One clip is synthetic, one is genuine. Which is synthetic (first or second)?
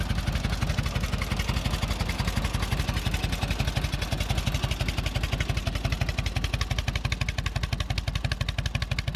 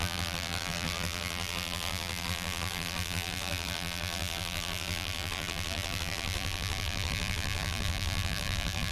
second